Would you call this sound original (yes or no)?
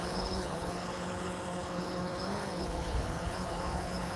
no